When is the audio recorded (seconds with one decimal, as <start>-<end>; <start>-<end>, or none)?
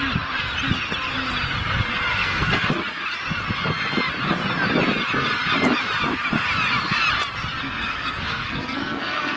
0.0-2.1; 2.7-7.6